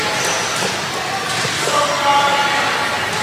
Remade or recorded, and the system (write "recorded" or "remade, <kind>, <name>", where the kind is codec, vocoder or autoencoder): recorded